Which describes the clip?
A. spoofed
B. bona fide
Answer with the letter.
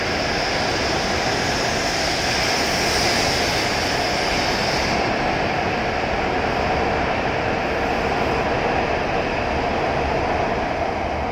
B